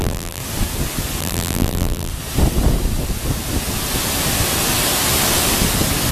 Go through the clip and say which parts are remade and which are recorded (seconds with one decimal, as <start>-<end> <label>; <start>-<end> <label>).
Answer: 0.0-0.4 remade; 0.4-1.2 recorded; 1.2-2.1 remade; 2.1-6.1 recorded